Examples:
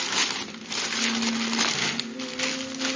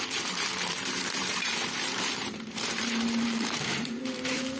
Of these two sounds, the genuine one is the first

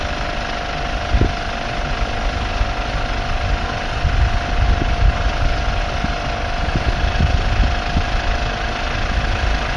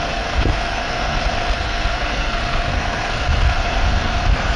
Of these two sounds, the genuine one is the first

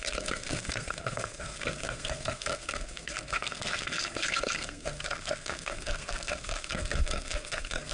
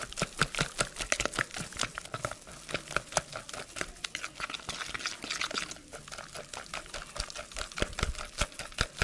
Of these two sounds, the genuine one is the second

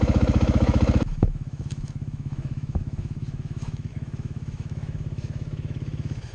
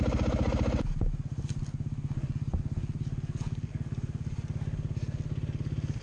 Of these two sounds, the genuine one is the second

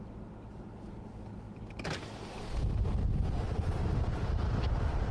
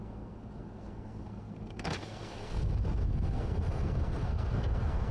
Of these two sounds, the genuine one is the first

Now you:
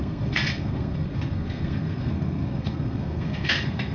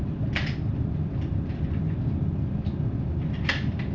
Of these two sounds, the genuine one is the second